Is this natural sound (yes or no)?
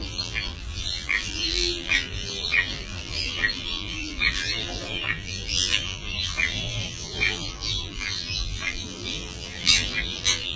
no